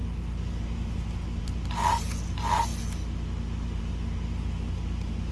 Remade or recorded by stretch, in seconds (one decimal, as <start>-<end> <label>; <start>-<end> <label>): 0.0-5.3 recorded